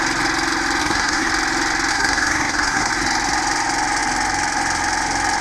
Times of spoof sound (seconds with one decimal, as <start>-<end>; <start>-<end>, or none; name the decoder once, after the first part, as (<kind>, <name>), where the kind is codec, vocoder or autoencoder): 0.8-1.3 (codec, SNAC); 1.9-2.9